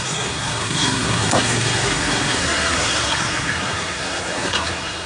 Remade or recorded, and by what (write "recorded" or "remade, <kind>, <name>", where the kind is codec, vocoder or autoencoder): remade, codec, SNAC